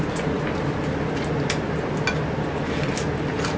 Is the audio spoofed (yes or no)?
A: no